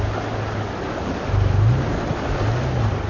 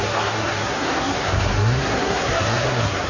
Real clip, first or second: first